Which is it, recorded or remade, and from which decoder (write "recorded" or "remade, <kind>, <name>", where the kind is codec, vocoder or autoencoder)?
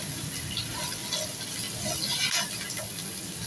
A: recorded